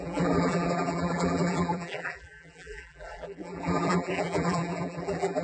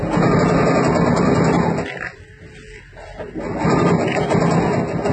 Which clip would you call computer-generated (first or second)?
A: first